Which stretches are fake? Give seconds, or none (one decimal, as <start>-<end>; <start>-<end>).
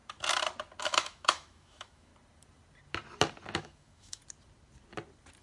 0.8-2.1; 3.6-4.2